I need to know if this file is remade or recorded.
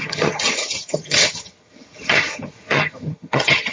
remade